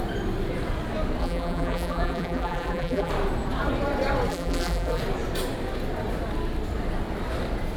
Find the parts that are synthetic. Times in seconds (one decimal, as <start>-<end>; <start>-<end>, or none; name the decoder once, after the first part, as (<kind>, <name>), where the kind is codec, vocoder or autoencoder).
1.2-3.1 (vocoder, BigVGAN v2); 4.3-5.0